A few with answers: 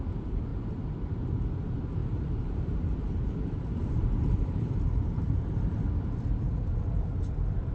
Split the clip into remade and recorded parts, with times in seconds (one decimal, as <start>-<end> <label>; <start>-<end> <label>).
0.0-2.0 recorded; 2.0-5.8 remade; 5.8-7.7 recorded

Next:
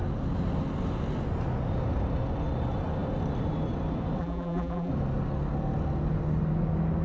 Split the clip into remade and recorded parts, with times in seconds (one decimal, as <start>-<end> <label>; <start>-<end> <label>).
0.0-4.2 recorded; 4.2-4.9 remade; 4.9-7.0 recorded

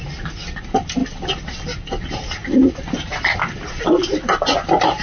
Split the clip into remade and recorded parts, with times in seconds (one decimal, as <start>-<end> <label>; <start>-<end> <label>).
0.0-5.0 recorded

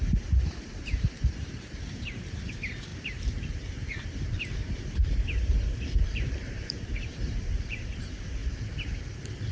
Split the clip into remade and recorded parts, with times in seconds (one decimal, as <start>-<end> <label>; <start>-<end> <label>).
0.0-8.4 remade; 8.4-9.5 recorded